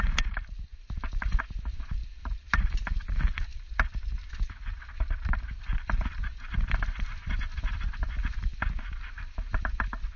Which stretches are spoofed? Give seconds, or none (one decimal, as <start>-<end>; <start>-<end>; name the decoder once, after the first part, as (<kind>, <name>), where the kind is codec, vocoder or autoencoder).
none